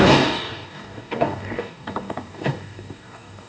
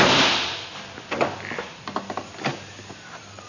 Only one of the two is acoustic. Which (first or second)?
second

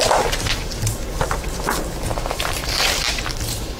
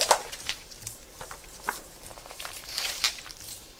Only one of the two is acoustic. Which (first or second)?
first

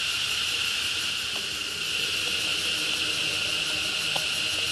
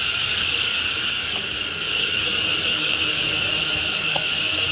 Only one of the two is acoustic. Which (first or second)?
first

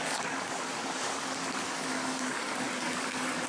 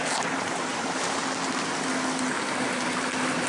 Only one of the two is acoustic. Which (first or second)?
second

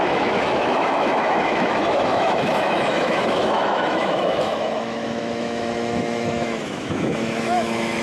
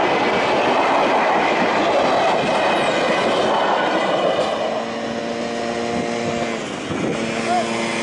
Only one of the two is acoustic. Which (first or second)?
second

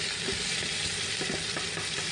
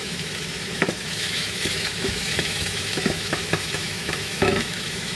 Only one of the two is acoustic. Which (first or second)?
first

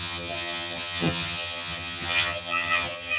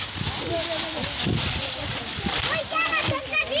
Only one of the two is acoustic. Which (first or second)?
second